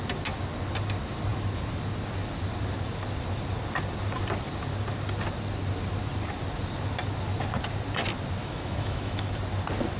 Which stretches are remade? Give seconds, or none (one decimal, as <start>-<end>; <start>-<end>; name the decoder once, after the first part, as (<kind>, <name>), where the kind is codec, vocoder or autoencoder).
8.4-9.3 (autoencoder, DAC-VAE)